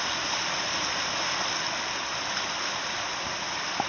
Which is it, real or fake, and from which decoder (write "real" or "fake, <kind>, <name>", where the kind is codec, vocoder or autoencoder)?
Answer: real